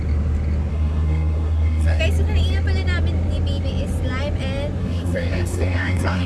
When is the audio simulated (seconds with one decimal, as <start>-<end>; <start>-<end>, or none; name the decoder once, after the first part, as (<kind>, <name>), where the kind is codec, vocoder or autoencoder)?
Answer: 0.7-2.0 (codec, SNAC); 4.8-6.3